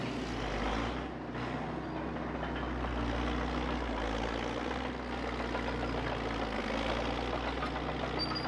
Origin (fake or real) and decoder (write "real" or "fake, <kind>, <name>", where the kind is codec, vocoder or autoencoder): real